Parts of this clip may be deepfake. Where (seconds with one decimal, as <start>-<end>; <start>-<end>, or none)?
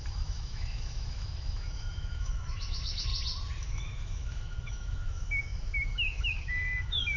0.0-3.1; 3.6-7.2